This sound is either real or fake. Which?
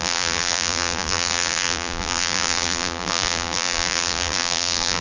fake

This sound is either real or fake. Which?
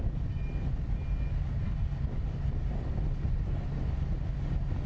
real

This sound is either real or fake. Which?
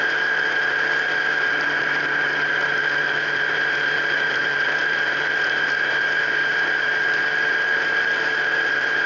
fake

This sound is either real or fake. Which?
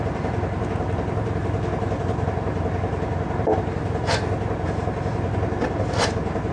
real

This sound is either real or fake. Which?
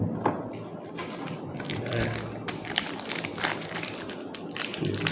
real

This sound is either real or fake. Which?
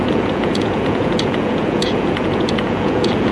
fake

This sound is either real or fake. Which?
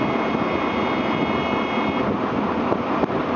real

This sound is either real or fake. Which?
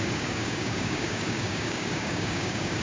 fake